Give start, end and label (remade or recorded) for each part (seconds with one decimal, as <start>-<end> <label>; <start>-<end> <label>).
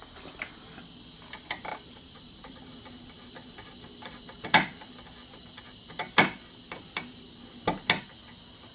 0.0-1.7 recorded; 1.7-2.6 remade; 2.6-8.7 recorded